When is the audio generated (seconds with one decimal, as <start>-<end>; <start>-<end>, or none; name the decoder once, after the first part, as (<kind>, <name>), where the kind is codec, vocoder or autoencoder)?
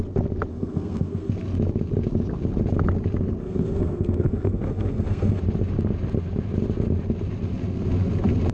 0.5-1.3 (codec, SNAC); 3.4-5.4